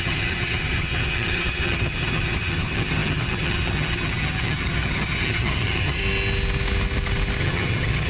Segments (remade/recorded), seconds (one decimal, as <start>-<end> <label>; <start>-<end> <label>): 0.0-6.0 remade; 6.0-7.4 recorded; 7.4-8.1 remade